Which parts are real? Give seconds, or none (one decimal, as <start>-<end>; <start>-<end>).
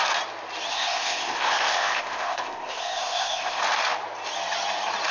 0.0-0.7; 3.6-5.1